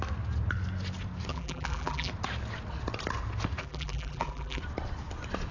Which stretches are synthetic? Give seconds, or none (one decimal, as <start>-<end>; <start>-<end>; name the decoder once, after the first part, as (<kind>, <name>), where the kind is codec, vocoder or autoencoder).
1.3-2.1 (vocoder, BigVGAN v2); 3.6-4.6